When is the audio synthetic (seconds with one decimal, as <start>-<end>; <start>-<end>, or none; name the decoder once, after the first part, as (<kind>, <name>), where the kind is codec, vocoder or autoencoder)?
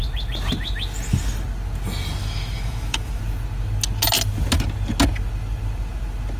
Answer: 2.2-3.2 (autoencoder, DAC-VAE)